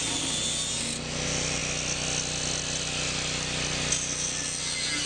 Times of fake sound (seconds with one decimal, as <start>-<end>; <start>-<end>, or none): none